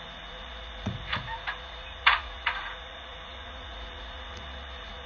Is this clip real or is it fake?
fake